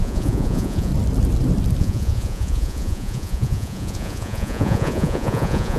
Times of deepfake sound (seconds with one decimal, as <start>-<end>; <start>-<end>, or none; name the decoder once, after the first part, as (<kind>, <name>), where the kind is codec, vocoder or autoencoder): 0.0-0.9 (vocoder, Vocos); 1.8-5.8